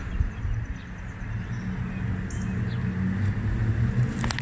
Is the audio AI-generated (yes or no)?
no